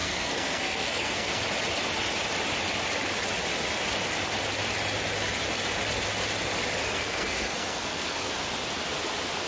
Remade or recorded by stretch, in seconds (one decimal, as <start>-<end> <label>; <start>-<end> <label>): 0.0-1.4 remade; 1.4-6.8 recorded; 6.8-8.3 remade; 8.3-9.5 recorded